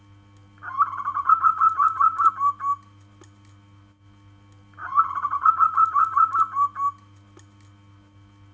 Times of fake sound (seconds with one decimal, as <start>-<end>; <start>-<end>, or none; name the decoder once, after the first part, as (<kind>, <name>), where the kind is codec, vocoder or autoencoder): 1.1-2.3 (vocoder, Vocos); 4.8-6.3